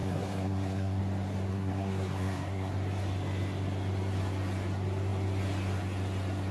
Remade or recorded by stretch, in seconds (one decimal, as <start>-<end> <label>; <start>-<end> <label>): 0.0-1.0 remade; 1.0-1.5 recorded; 1.5-2.7 remade; 2.7-6.5 recorded